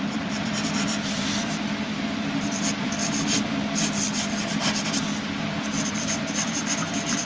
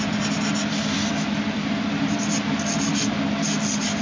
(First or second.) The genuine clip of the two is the second